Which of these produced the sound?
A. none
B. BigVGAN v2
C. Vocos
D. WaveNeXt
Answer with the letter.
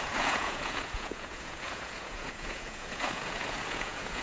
C